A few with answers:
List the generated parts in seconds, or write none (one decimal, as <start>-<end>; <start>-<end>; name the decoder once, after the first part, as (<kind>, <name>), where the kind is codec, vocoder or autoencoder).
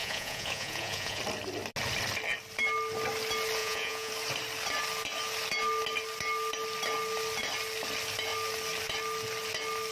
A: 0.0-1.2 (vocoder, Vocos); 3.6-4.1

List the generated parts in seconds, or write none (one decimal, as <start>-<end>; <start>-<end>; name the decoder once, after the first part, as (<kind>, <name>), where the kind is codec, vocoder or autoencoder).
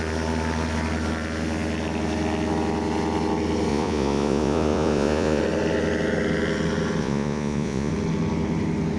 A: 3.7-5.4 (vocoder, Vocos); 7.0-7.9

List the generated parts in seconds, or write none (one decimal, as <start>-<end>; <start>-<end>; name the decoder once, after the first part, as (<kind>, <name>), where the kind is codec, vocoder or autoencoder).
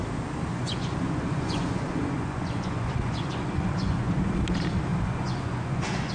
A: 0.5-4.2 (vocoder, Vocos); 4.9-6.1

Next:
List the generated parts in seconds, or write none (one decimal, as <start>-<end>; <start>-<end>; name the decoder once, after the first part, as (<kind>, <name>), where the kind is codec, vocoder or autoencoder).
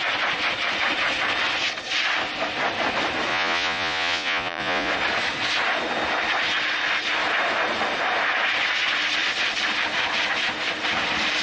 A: 3.3-4.9 (vocoder, Vocos)